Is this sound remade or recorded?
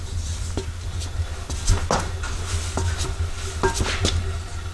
recorded